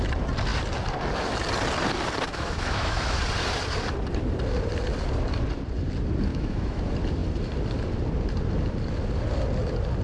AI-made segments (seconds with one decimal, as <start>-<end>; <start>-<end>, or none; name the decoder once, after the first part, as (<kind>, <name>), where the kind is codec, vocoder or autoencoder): 2.3-3.2 (autoencoder, DAC-VAE); 6.3-6.8